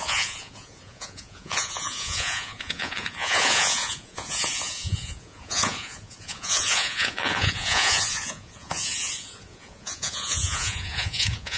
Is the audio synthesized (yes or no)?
yes